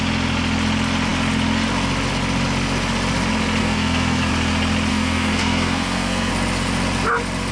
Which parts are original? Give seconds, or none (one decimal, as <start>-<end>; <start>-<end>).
0.0-3.6; 4.3-4.9; 6.3-7.5